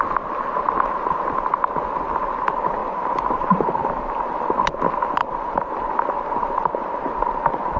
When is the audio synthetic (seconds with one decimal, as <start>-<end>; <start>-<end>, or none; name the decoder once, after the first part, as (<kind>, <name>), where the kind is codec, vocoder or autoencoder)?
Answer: 2.8-4.5 (vocoder, BigVGAN v2); 5.2-5.9; 6.4-7.1